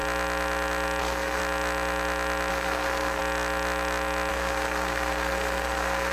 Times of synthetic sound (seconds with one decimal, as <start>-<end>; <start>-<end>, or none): 1.0-1.4; 2.5-3.2; 4.3-6.1

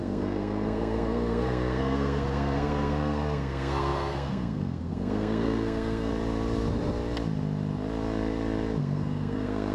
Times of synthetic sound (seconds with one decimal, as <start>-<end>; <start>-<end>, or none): 0.0-6.1; 8.8-9.7

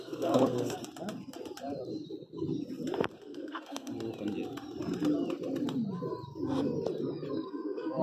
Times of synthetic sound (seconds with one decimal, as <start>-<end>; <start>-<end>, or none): 0.0-0.8; 3.2-3.9; 7.3-8.0

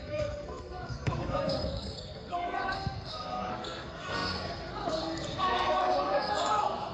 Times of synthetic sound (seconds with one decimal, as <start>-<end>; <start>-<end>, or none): 0.0-6.9

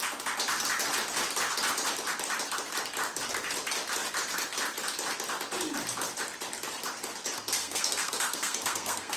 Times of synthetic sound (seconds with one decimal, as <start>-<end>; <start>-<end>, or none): 7.6-9.2

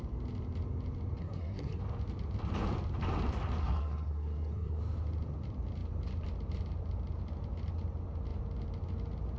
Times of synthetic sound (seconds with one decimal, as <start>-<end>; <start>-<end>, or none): 1.2-1.8; 3.6-4.8

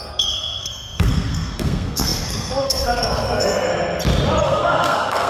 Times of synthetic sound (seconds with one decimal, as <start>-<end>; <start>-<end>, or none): 0.0-3.7; 4.4-5.3

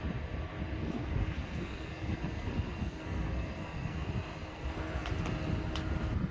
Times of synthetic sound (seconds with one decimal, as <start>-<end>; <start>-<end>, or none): 0.8-4.1; 4.5-5.1